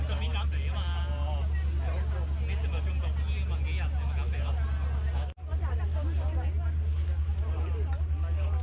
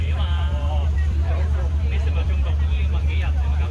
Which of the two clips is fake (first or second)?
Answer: second